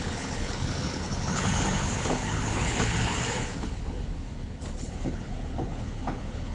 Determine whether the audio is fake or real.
fake